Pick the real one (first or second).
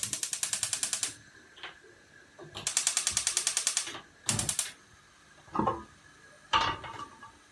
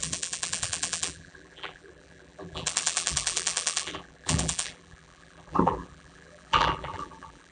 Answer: first